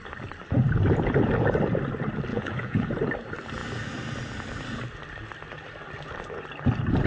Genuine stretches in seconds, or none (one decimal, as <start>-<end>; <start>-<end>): 0.0-2.3; 2.9-7.1